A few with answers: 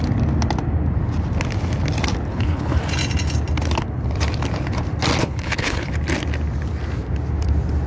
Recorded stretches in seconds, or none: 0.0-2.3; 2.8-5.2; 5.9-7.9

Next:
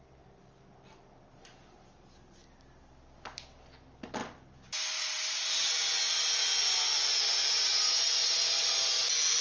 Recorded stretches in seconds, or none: 0.0-9.4

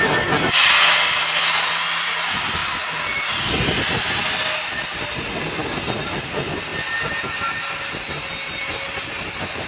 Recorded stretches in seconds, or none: 0.0-9.7